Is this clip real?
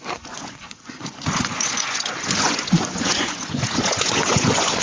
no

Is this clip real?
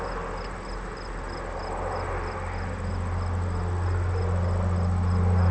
yes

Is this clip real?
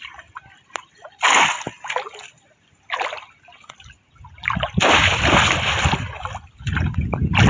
yes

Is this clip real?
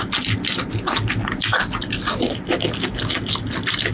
yes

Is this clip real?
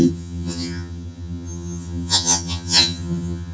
no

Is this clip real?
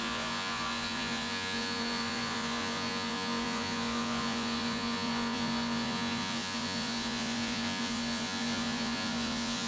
no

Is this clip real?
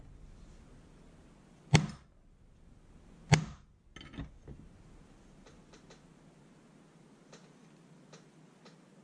yes